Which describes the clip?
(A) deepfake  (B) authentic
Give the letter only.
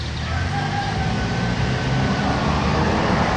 B